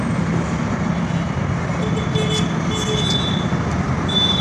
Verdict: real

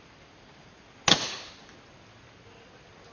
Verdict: real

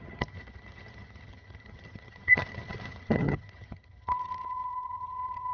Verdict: fake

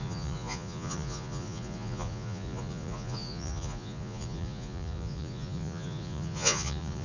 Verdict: fake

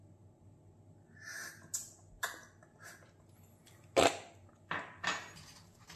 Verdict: real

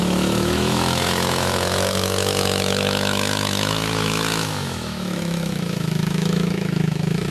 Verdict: fake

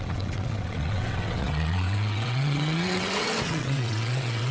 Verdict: fake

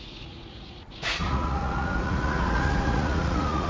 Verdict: fake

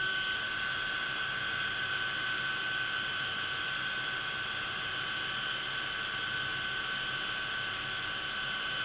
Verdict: real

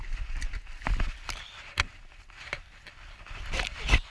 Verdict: real